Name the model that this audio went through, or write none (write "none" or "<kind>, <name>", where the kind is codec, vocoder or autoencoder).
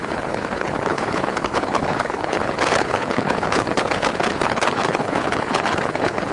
codec, HILCodec